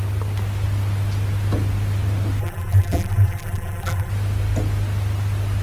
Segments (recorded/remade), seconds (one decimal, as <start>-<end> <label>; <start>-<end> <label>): 0.0-2.4 recorded; 2.4-4.1 remade; 4.1-5.6 recorded